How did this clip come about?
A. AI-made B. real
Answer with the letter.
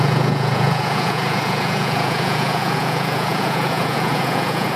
A